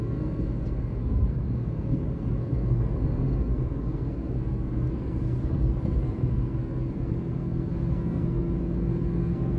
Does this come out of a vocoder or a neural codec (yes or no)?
yes